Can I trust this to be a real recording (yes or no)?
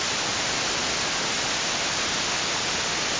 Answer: yes